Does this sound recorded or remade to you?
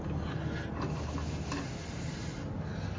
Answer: recorded